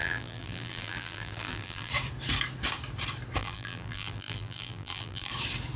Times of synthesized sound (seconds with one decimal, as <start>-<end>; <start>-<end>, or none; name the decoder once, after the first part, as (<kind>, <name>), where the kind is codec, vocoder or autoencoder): 0.0-1.9 (vocoder, BigVGAN v2); 3.4-5.3

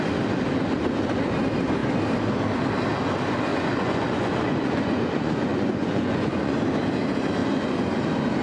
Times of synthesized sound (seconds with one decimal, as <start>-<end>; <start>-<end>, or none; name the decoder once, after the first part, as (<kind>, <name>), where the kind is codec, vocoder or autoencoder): 3.5-6.5 (vocoder, Vocos); 7.4-8.0

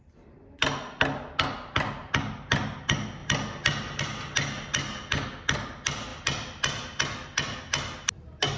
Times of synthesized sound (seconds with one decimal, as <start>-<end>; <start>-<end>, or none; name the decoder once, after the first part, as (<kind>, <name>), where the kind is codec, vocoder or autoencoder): none

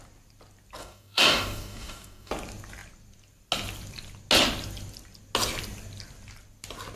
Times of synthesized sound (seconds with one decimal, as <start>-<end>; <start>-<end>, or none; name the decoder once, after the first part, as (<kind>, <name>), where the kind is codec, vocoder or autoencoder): 0.8-2.3 (codec, DAC)